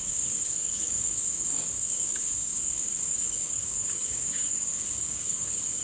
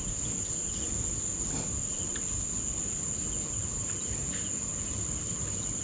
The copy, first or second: first